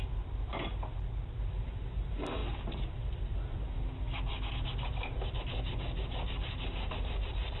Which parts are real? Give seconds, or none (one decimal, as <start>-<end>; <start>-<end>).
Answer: 0.0-7.6